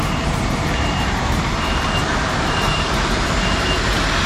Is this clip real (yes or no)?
no